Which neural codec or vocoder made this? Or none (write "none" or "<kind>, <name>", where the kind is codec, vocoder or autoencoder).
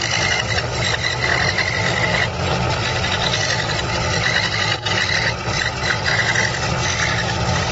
none